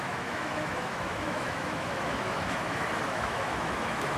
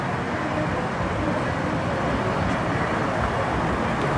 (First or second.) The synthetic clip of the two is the first